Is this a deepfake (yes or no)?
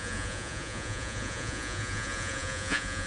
yes